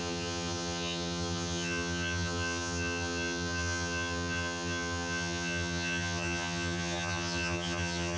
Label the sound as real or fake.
fake